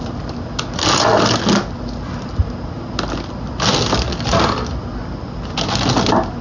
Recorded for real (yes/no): yes